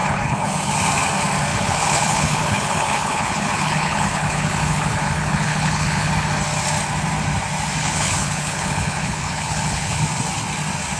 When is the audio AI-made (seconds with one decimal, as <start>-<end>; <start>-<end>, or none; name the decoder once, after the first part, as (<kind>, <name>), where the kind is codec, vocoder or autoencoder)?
0.0-0.7 (codec, HILCodec); 1.5-6.1; 7.8-10.0